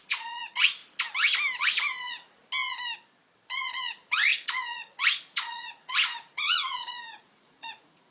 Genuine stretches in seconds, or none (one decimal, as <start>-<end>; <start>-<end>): 0.8-1.6; 2.4-3.6